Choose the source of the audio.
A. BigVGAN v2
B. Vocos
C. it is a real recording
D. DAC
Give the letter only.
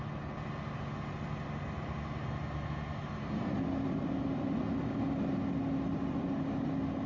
C